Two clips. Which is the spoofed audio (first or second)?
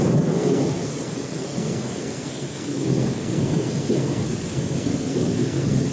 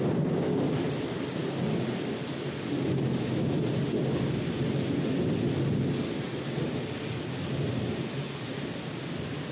first